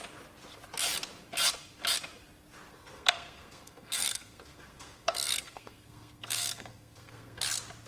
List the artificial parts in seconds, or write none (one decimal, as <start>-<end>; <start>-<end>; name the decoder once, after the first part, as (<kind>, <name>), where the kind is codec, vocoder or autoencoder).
2.7-7.4 (codec, SNAC)